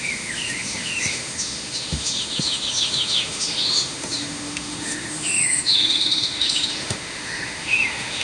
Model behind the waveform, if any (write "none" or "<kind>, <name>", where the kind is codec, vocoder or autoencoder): autoencoder, DAC-VAE